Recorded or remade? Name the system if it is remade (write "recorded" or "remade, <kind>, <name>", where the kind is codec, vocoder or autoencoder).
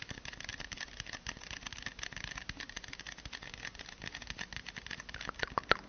recorded